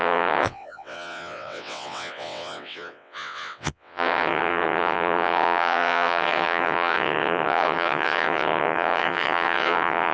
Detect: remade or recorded remade